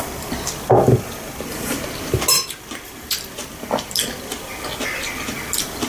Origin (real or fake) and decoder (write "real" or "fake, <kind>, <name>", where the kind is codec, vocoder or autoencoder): real